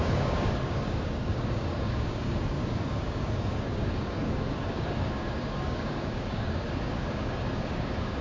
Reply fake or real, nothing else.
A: fake